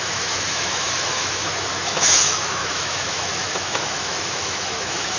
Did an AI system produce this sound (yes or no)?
yes